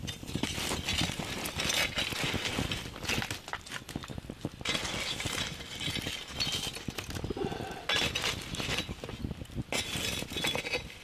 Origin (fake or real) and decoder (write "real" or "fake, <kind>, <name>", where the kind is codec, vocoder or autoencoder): real